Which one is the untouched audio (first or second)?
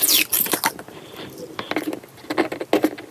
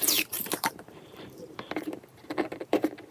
first